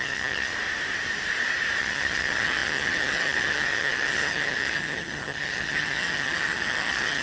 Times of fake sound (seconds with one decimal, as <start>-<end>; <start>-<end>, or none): 0.0-0.5; 1.8-7.2